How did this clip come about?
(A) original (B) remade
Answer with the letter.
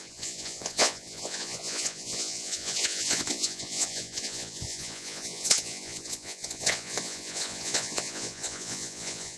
B